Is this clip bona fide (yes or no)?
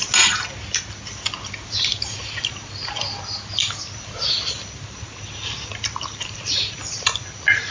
yes